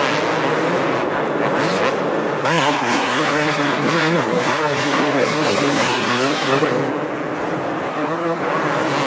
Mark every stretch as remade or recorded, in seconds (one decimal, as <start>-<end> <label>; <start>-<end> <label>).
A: 0.0-2.4 recorded; 2.4-6.7 remade; 6.7-7.9 recorded; 7.9-8.4 remade; 8.4-9.1 recorded